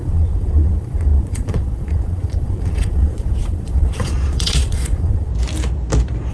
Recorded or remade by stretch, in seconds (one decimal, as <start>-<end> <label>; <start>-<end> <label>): 0.0-5.3 remade; 5.3-6.3 recorded